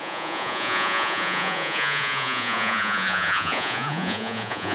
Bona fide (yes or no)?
no